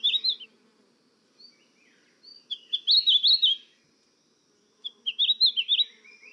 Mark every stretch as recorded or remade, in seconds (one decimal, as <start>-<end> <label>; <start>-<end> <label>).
0.0-6.3 recorded